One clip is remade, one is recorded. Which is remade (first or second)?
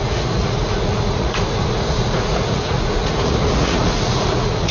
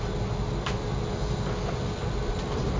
first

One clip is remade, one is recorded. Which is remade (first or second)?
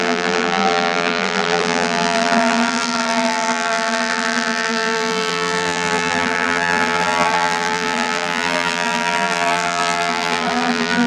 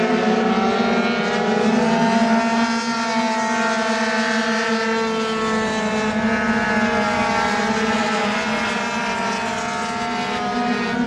first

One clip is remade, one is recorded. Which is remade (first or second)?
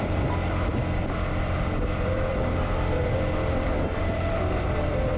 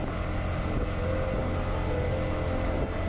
first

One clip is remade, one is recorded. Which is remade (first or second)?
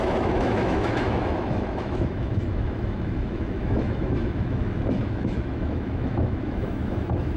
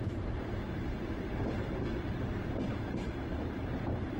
first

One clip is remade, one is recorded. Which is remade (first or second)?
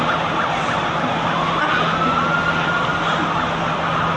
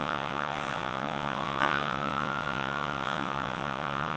second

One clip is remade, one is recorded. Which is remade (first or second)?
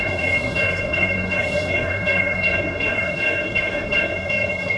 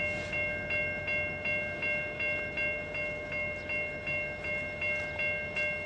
first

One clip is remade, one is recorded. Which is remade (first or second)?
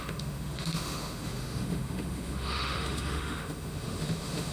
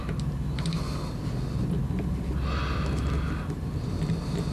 first